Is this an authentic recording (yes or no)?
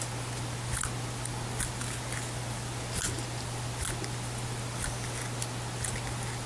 yes